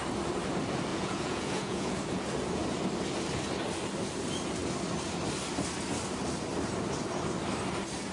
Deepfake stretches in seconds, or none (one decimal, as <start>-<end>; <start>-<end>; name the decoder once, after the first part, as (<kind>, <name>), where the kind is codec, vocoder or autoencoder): 0.9-1.9 (vocoder, Vocos)